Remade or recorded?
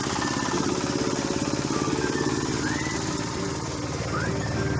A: recorded